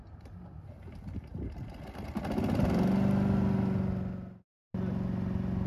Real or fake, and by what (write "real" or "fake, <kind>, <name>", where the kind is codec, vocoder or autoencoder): real